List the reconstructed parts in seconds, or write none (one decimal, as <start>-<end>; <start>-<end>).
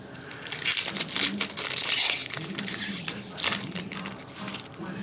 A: none